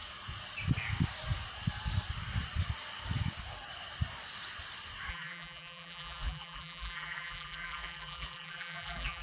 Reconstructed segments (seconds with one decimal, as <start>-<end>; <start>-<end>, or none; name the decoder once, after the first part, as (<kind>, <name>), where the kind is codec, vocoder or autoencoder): 5.1-9.2 (vocoder, BigVGAN v2)